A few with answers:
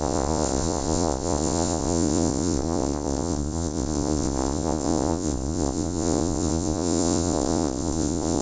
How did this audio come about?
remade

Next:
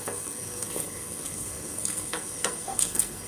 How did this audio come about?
remade